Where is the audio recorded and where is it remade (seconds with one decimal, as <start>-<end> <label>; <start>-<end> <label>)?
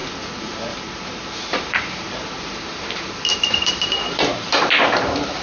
0.0-1.5 recorded; 1.5-4.7 remade; 4.7-5.4 recorded